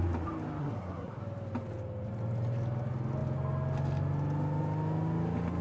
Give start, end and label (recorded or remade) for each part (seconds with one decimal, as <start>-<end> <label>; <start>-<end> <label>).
0.0-0.6 recorded; 0.6-1.2 remade; 1.2-5.6 recorded